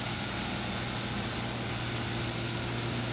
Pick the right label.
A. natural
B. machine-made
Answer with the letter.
A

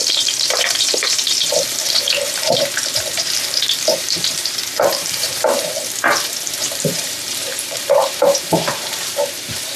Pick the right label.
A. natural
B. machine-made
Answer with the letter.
B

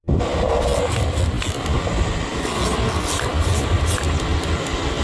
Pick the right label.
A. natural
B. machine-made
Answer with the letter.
A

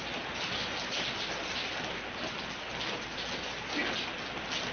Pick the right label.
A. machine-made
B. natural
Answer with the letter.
B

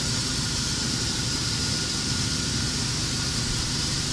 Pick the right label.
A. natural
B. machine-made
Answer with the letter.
B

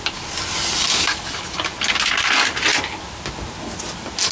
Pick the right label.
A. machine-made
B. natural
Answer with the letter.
B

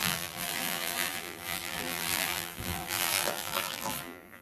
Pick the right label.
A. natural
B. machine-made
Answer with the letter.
B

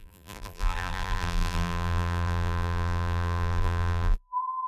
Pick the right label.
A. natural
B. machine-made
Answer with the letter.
B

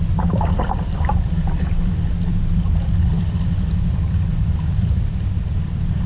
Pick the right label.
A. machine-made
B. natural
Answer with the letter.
A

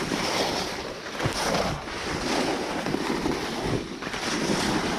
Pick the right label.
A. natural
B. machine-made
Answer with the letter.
B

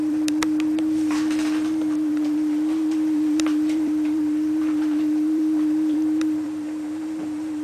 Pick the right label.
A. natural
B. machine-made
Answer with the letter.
B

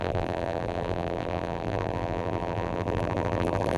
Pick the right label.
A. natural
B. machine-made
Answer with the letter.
B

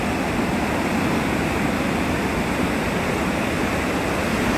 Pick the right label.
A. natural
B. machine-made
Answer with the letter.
A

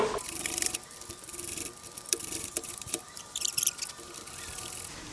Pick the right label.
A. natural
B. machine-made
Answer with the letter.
B